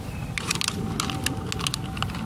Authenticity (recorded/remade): recorded